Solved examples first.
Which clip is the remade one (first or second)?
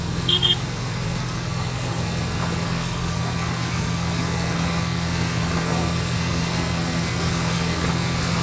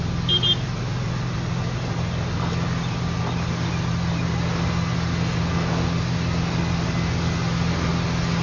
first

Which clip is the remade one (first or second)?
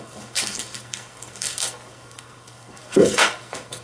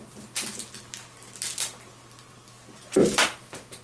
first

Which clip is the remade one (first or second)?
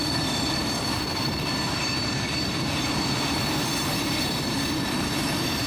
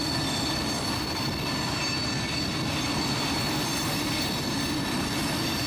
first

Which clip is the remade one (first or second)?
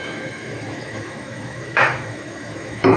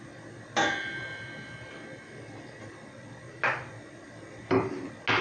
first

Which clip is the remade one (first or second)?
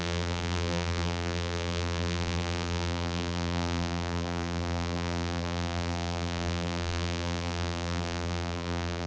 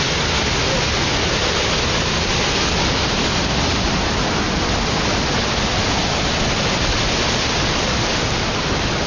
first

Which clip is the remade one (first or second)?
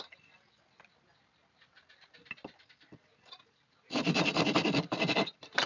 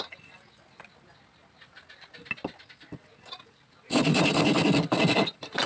first